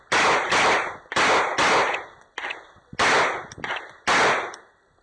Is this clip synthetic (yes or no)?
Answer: no